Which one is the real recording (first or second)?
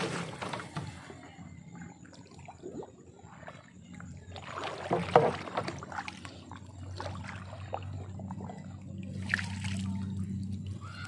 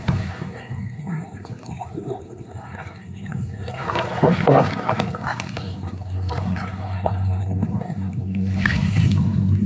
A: first